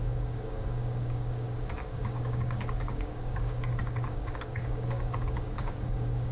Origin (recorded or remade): remade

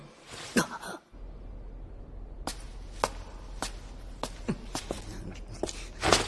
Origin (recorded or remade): recorded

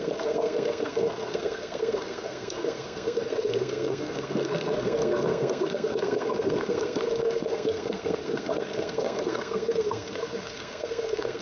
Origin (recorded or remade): remade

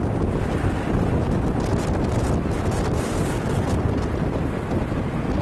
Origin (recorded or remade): recorded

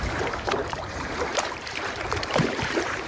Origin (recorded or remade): remade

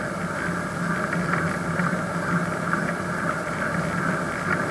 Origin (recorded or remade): recorded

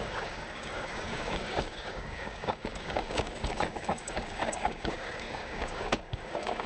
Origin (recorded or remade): remade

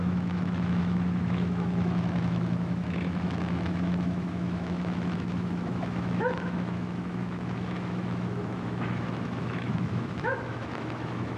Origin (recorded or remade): remade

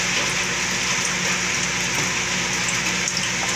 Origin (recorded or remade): recorded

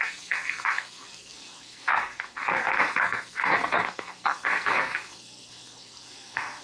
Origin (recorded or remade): remade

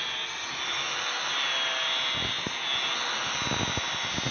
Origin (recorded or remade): recorded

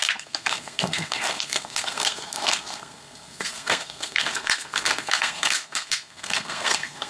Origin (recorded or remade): remade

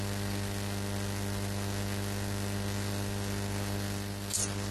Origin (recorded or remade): recorded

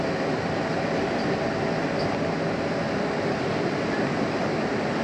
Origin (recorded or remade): recorded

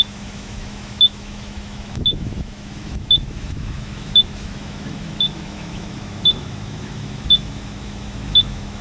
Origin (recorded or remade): remade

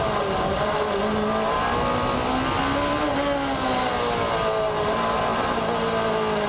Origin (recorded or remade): recorded